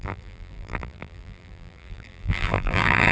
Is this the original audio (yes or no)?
no